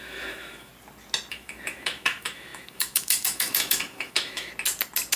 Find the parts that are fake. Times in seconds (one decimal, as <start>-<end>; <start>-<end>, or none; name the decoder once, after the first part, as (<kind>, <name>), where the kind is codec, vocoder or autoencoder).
0.0-0.7 (autoencoder, DAC-VAE); 1.3-4.5